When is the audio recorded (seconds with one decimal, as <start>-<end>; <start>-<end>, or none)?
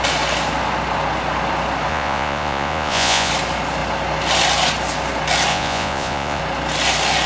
0.0-1.9; 3.3-5.5; 6.4-7.3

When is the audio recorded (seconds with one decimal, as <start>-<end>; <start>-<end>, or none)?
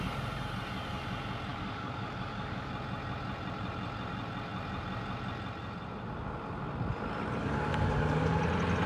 0.0-1.5; 2.7-7.4; 8.4-8.9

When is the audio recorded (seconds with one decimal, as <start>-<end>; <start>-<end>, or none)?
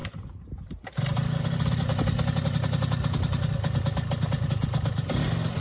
1.4-5.6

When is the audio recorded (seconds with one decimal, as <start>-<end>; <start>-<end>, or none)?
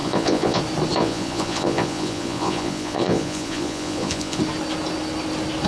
0.6-1.0; 4.4-5.7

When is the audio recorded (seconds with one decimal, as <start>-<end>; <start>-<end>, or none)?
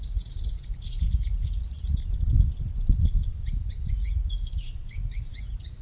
2.0-3.9